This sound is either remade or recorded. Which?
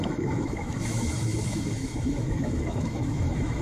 remade